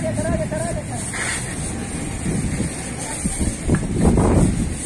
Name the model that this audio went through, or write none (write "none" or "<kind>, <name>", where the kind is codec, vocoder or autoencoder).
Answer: none